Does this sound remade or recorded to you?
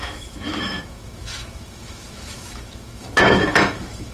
remade